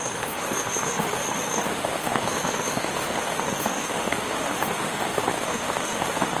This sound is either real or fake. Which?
fake